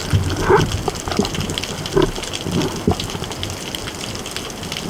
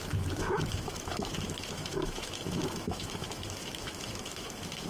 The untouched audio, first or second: first